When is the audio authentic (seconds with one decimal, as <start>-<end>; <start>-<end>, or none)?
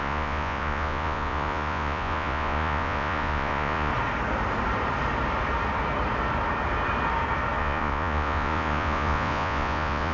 3.9-7.6